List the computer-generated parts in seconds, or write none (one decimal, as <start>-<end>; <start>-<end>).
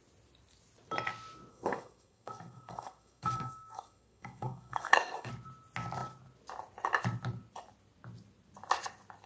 1.5-5.3